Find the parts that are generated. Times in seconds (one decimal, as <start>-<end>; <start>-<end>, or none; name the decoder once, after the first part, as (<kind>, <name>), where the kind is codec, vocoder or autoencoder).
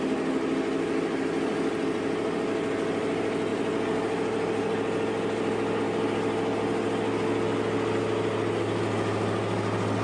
none